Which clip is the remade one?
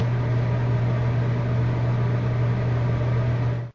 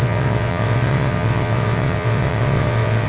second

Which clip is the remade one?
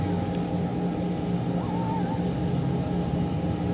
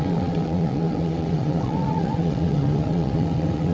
second